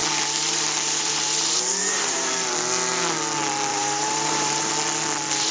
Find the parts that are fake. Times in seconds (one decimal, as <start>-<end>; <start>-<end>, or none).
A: 0.0-2.3; 3.7-4.7